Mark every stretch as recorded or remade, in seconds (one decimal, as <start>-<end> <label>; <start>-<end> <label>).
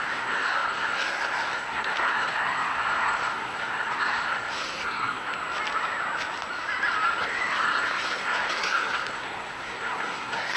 0.0-5.3 remade; 5.3-7.2 recorded; 7.2-10.6 remade